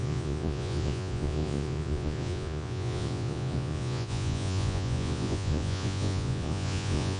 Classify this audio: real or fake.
fake